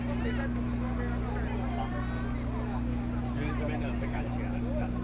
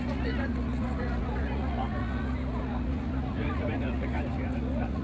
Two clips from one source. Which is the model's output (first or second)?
second